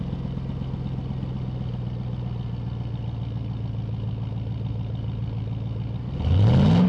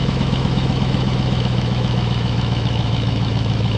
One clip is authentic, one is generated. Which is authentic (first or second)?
first